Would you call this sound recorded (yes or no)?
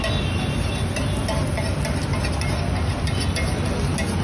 yes